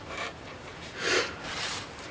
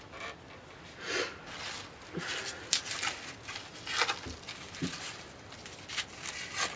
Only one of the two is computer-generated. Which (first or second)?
first